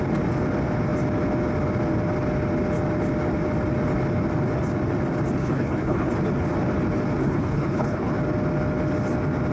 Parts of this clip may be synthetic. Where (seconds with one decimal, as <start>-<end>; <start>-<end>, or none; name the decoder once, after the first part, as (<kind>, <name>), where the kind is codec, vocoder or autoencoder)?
5.4-6.1 (codec, HILCodec); 7.2-8.1